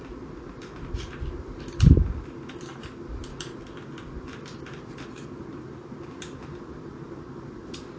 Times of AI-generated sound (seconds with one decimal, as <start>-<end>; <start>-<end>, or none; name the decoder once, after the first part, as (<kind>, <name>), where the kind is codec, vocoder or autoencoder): none